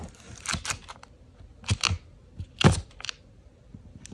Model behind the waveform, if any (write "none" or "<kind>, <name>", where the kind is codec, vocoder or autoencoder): none